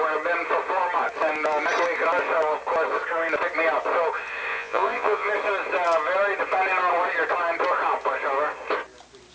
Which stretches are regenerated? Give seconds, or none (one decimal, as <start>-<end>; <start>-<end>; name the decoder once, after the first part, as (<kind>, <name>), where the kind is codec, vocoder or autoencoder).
4.5-5.3 (vocoder, Vocos)